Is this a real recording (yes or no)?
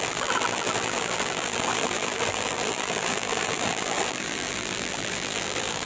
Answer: no